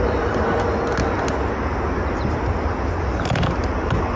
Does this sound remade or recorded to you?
recorded